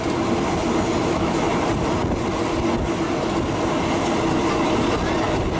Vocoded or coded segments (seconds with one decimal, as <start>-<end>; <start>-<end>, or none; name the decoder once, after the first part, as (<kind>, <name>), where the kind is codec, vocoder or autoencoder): 1.0-1.5 (autoencoder, DAC-VAE)